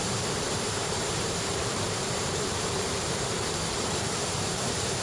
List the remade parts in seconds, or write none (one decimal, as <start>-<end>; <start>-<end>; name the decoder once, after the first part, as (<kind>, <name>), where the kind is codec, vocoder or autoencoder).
0.0-5.0 (vocoder, BigVGAN v2)